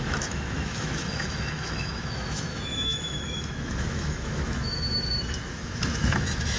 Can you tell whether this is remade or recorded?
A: remade